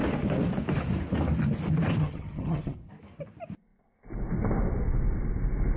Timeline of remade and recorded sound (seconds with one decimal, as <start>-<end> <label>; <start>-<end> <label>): 0.0-2.0 recorded; 2.0-2.9 remade; 2.9-5.8 recorded